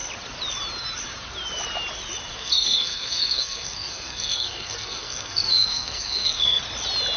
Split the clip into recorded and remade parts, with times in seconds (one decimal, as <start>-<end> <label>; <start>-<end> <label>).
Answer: 0.0-2.3 recorded; 2.3-6.6 remade; 6.6-7.2 recorded